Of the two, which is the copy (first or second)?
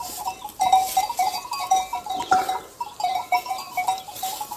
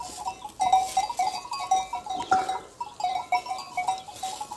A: first